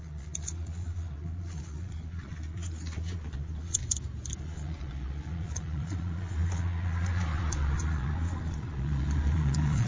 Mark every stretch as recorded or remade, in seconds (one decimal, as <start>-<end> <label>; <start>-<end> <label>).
0.0-3.8 remade; 3.8-4.4 recorded; 4.4-9.9 remade